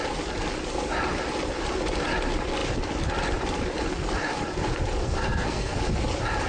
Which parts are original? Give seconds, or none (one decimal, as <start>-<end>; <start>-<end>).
0.0-5.0; 5.8-6.5